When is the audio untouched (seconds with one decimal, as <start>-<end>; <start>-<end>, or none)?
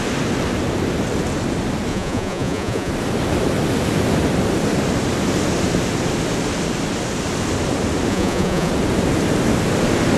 0.0-1.9; 2.9-8.1; 8.7-10.2